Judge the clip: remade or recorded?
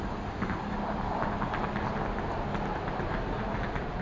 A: recorded